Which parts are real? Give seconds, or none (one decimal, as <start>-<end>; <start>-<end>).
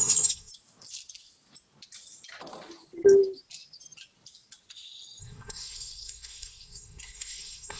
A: 0.5-5.2